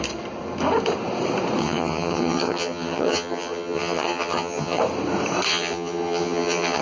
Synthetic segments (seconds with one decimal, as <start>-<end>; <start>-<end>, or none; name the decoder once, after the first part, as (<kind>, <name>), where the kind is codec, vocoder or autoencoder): 1.6-4.8 (vocoder, HiFi-GAN); 5.5-6.8